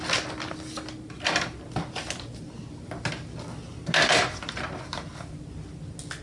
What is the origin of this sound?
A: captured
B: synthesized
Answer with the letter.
A